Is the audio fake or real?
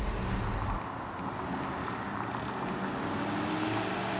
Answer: real